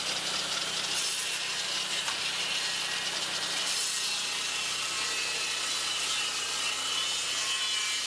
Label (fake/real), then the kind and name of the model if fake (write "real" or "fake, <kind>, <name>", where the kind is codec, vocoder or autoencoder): real